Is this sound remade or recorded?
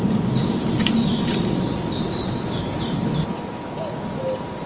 recorded